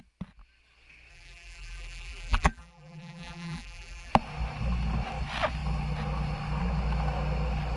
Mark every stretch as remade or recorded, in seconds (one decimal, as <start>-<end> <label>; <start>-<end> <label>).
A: 0.0-1.1 recorded; 1.1-4.1 remade; 4.1-7.8 recorded